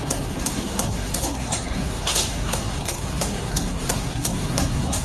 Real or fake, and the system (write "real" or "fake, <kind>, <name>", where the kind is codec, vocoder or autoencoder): fake, codec, SNAC